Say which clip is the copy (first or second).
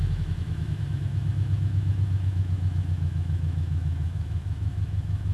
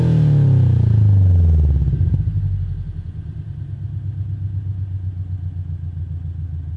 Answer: first